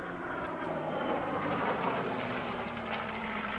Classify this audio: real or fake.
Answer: fake